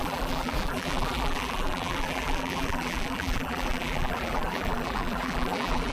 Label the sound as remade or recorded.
remade